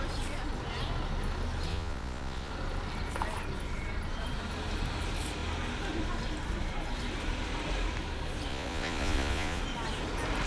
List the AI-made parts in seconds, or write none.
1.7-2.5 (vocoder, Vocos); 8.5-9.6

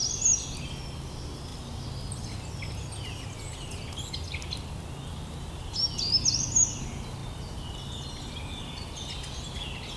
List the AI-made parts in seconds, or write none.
none

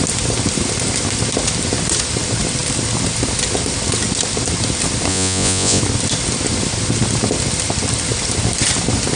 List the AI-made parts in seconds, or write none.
5.1-5.8 (vocoder, Vocos)

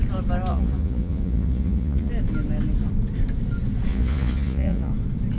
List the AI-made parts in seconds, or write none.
0.5-2.1 (vocoder, Vocos); 3.9-4.9

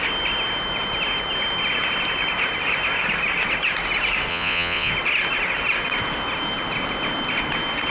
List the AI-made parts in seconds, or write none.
4.3-4.9 (vocoder, Vocos)